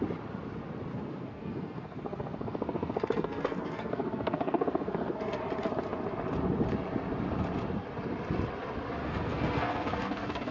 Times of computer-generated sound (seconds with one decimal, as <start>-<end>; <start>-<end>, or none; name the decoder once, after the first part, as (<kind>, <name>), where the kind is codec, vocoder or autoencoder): 0.9-5.4 (codec, SNAC); 9.0-10.5